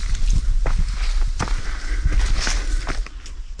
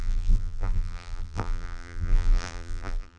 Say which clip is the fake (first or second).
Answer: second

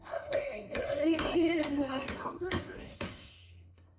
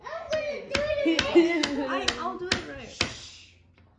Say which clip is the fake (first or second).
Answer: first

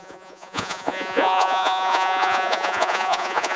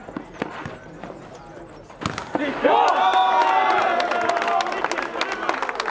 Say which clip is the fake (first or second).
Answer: first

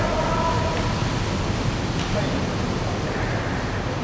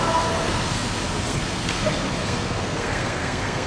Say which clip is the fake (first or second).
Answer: second